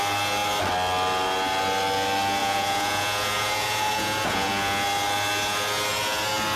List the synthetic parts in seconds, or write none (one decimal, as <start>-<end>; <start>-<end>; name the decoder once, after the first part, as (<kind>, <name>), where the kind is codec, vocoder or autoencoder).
2.4-4.5 (vocoder, Vocos)